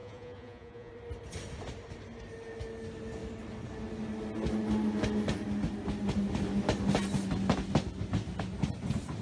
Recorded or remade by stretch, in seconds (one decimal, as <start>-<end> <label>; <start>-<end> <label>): 0.0-0.9 remade; 0.9-9.2 recorded